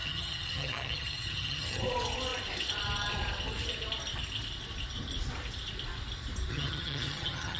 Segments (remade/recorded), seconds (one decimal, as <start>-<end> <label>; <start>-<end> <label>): 0.0-1.8 remade; 1.8-6.5 recorded; 6.5-7.6 remade